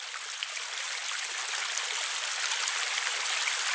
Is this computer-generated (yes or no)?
no